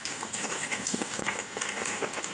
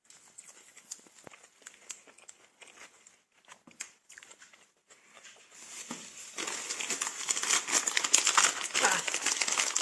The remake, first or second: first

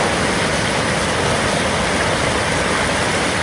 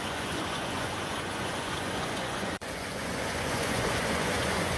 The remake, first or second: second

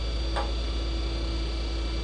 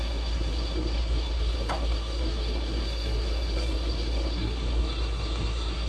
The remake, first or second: second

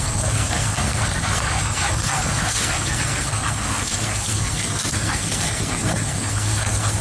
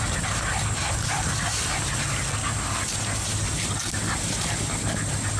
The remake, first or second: first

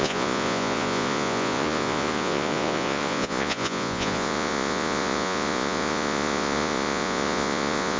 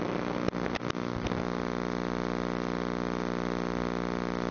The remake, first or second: first